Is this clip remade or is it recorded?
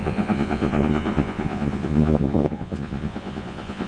remade